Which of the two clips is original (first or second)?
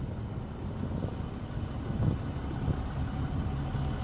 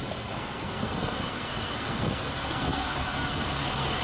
first